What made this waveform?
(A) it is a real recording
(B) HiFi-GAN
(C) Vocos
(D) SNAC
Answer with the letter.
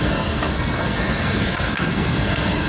D